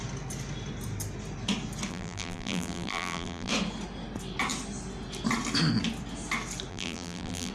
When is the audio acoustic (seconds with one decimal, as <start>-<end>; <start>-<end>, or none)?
0.0-1.9; 3.5-6.7